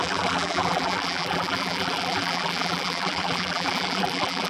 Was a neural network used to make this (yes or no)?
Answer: yes